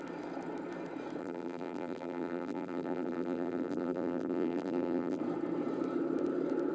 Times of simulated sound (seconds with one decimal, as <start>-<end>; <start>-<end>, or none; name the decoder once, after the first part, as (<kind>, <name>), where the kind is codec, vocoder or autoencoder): 1.2-5.2 (vocoder, BigVGAN v2)